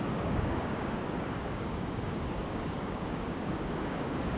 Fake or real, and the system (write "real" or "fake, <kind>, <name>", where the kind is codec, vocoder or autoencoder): fake, codec, DAC